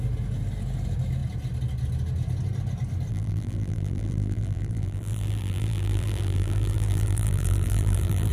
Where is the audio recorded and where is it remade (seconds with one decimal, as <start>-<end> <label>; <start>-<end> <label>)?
0.0-3.1 recorded; 3.1-8.3 remade